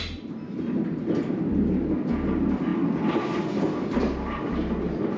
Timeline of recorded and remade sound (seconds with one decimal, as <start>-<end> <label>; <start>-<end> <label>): 0.0-5.2 recorded